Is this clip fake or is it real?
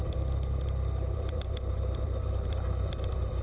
fake